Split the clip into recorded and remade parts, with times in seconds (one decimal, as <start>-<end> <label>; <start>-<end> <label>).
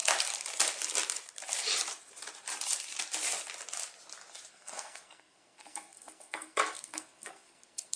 0.0-4.5 recorded; 4.5-8.0 remade